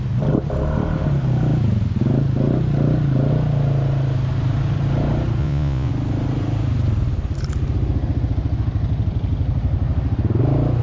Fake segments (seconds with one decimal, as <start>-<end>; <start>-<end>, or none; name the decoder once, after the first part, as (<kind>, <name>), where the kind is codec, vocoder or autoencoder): 5.4-5.9 (vocoder, Vocos)